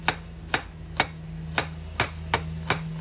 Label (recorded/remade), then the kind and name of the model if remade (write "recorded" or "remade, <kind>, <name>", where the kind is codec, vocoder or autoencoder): recorded